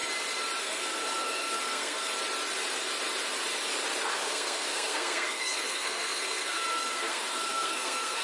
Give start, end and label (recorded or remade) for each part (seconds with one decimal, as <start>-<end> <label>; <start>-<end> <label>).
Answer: 0.0-0.6 recorded; 0.6-2.1 remade; 2.1-4.1 recorded; 4.1-8.2 remade

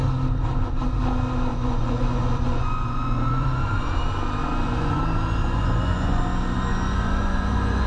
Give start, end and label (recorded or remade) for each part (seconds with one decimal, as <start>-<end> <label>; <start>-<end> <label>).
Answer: 0.0-1.5 recorded; 1.5-3.9 remade; 3.9-4.4 recorded; 4.4-5.0 remade; 5.0-5.4 recorded; 5.4-6.2 remade; 6.2-6.7 recorded; 6.7-7.9 remade

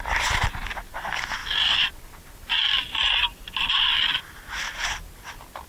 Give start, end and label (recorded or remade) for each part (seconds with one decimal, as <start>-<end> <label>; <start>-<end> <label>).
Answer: 0.0-5.7 recorded

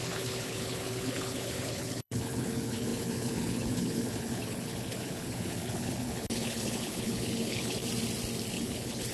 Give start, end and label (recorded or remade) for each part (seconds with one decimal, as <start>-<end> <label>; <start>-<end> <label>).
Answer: 0.0-7.8 remade; 7.8-8.5 recorded; 8.5-9.1 remade